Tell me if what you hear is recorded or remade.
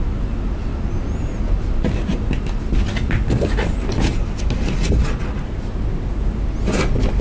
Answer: recorded